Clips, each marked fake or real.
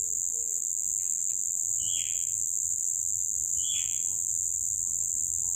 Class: fake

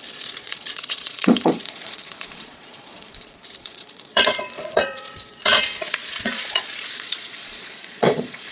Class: fake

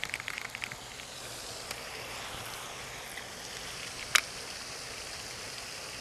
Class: fake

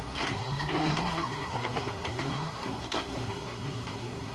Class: fake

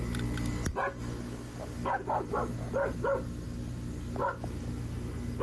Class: real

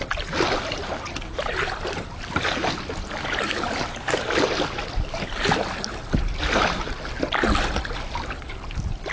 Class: real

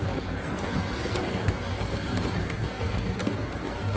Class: fake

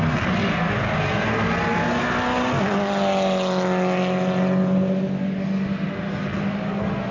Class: real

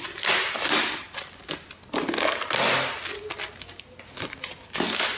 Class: real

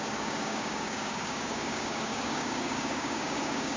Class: fake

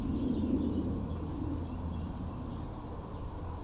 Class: real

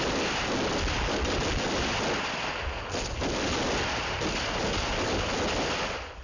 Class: real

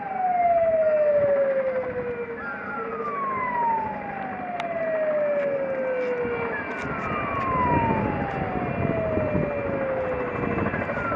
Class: real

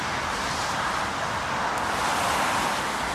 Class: real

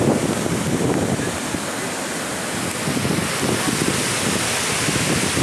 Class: real